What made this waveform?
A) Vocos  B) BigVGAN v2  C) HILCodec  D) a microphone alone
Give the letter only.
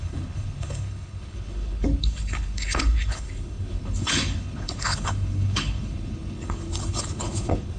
C